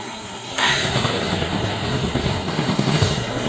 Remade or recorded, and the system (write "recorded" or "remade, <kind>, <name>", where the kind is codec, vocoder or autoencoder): remade, codec, SNAC